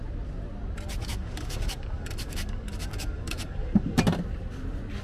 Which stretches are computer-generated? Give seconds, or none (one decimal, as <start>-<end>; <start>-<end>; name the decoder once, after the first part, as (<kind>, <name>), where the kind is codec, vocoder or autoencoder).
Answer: 1.0-4.0 (codec, DAC)